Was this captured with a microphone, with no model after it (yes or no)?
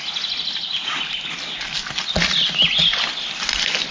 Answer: yes